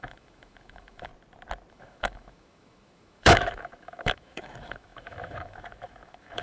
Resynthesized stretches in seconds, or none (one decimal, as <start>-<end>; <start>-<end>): 0.0-1.1; 1.7-6.4